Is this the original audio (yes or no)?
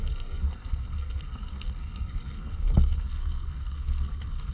no